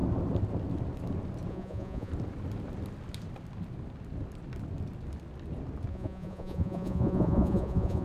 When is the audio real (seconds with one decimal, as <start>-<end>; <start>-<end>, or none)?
0.0-1.5; 2.1-5.9